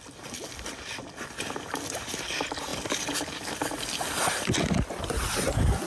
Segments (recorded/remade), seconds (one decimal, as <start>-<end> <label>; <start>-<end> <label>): 0.0-5.9 recorded